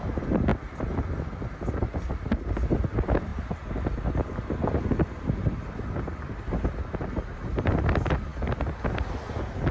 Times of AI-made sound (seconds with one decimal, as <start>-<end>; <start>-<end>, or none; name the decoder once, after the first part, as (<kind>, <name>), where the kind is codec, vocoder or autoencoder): none